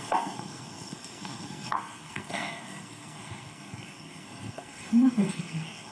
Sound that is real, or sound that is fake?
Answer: fake